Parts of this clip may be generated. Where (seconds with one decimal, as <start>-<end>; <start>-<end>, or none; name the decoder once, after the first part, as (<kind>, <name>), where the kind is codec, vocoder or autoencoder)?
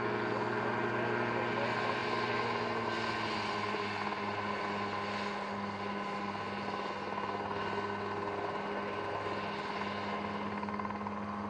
none